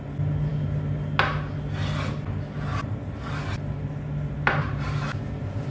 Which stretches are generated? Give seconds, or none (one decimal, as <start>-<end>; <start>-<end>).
none